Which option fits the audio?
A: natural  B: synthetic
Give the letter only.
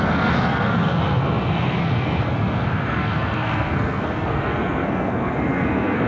B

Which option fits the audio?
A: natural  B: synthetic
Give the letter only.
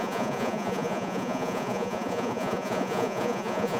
B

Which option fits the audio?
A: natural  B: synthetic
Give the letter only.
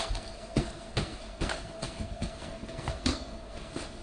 B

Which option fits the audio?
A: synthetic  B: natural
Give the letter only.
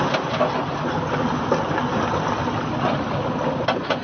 B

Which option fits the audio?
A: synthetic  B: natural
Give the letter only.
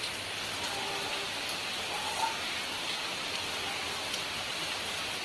B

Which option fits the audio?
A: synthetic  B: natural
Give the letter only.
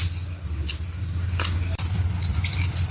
B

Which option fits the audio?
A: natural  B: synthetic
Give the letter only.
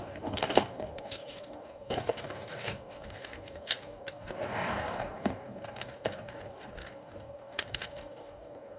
B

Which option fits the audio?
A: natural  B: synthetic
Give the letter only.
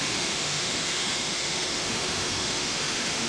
B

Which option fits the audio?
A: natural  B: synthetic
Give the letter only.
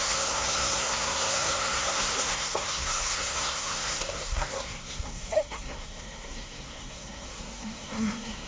B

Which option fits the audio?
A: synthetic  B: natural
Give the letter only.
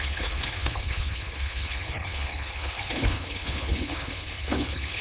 A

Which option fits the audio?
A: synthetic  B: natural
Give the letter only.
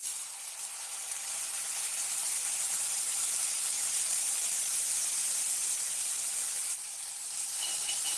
A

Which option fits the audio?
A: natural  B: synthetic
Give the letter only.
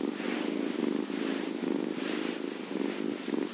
A